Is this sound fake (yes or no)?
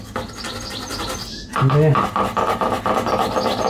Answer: no